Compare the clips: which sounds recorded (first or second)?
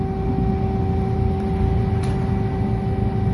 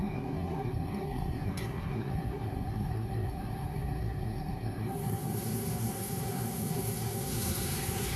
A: first